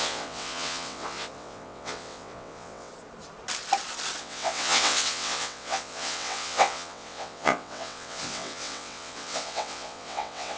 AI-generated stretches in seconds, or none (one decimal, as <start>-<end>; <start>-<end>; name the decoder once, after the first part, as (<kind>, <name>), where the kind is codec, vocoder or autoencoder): 0.0-2.9 (vocoder, WaveNeXt); 4.2-10.6